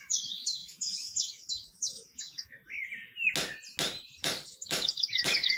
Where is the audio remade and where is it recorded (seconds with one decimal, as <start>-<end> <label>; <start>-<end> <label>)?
0.0-2.6 remade; 2.6-4.2 recorded; 4.2-5.6 remade